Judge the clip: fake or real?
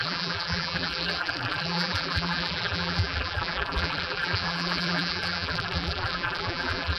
fake